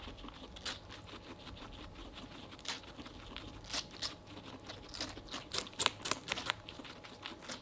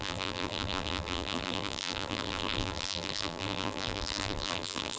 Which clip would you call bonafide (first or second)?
first